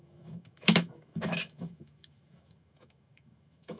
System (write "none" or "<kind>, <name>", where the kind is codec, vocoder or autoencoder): autoencoder, DAC-VAE